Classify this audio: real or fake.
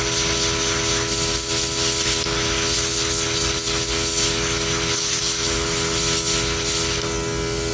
real